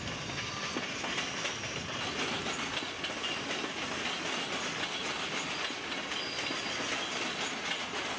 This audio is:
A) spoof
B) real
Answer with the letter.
B